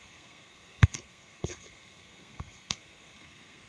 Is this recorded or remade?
remade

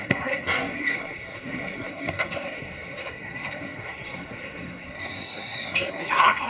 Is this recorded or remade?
remade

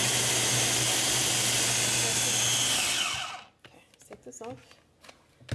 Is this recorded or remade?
recorded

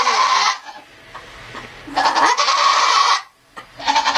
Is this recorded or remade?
recorded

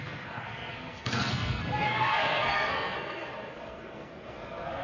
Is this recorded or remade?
remade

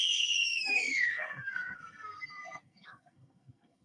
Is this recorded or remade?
remade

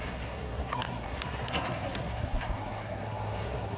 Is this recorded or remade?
remade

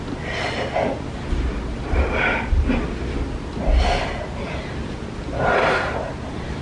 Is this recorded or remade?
recorded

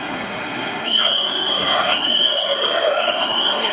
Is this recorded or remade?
remade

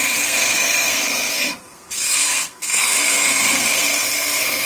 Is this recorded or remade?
remade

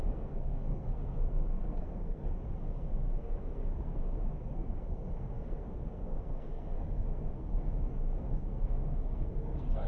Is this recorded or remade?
remade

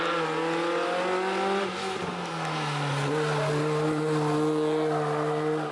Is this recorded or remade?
recorded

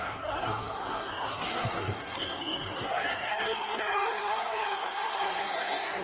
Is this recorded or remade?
remade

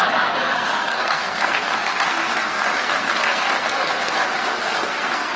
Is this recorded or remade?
remade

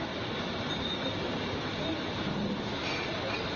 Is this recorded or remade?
recorded